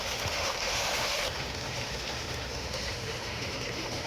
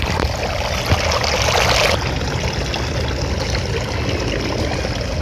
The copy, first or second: first